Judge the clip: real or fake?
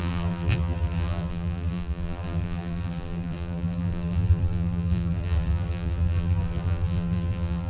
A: fake